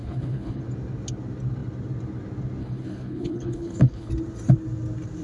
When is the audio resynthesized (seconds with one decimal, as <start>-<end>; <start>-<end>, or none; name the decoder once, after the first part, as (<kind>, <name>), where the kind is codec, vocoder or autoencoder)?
0.0-0.6 (codec, HILCodec); 2.6-4.1